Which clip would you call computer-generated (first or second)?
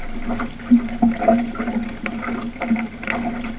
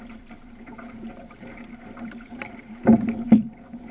second